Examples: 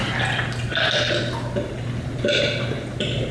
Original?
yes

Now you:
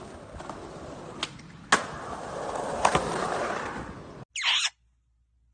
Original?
yes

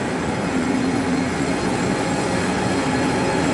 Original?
no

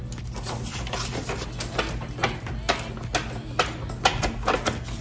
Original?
yes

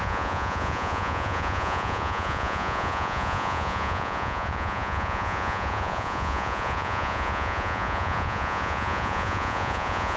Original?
no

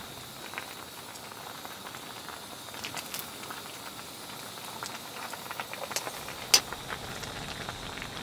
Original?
yes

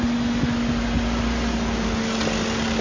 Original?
yes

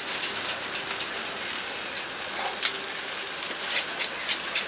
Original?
yes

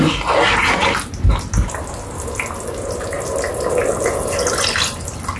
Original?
yes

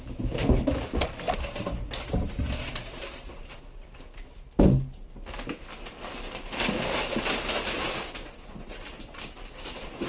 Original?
yes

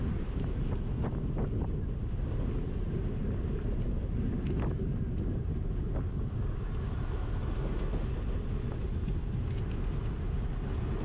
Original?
yes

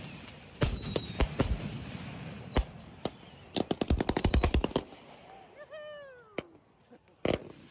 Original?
yes